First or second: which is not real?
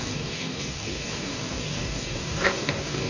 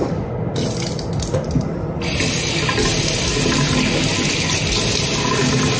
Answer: first